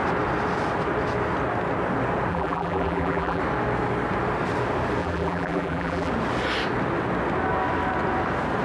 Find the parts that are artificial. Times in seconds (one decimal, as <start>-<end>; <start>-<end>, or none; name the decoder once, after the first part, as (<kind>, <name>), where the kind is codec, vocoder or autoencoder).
2.3-3.4 (vocoder, BigVGAN v2); 5.0-6.1